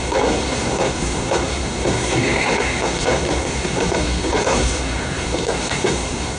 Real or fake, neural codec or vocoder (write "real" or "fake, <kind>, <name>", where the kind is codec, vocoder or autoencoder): fake, codec, SNAC